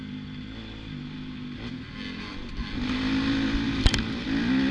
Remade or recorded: recorded